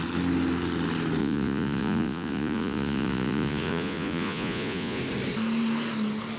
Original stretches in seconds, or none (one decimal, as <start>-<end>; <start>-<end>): 0.0-1.2; 5.0-6.4